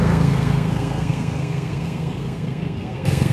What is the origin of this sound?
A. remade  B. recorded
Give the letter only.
A